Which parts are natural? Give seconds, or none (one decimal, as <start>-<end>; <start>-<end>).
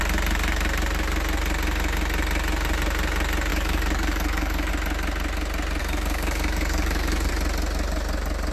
0.0-3.5; 4.7-5.8; 7.3-8.5